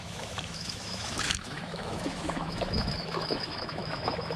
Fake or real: fake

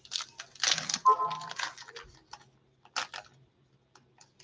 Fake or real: real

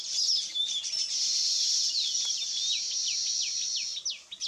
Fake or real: real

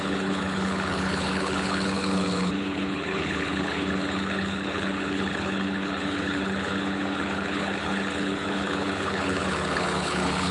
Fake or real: fake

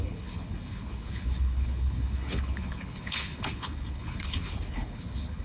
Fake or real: fake